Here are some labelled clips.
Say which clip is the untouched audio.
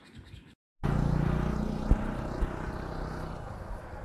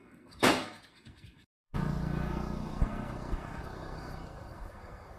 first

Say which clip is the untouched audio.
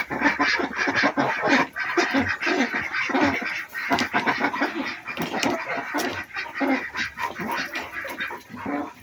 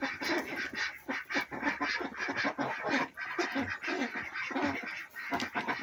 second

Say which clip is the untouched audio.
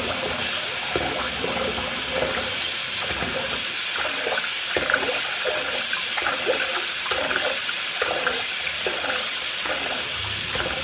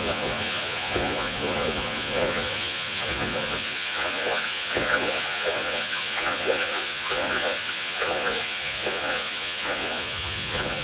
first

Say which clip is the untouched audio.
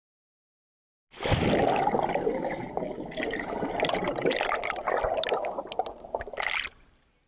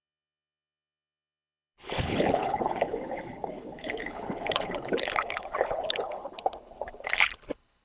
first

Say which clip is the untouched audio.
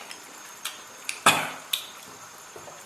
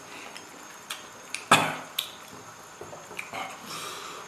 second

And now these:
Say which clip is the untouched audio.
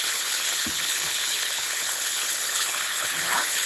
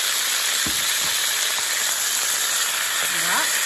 second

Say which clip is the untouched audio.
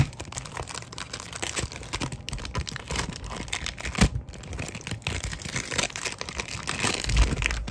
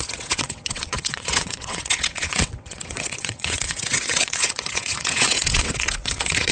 first